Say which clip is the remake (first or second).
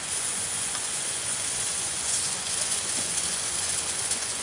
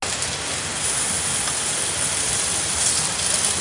first